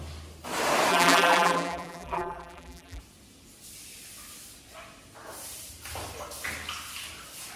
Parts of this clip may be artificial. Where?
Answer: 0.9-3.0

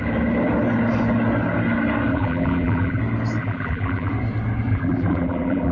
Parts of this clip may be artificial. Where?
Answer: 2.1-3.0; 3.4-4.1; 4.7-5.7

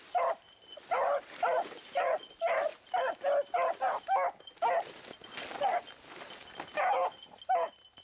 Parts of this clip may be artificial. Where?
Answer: none